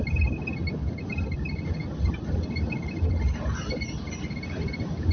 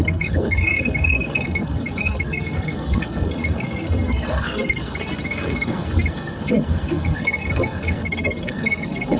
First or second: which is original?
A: first